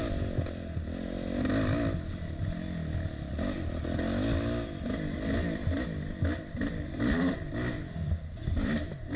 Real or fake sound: real